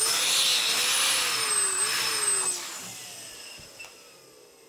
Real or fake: real